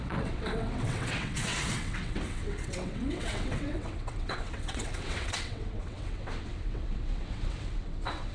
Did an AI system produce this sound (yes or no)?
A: yes